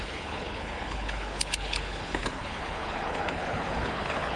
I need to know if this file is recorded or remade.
remade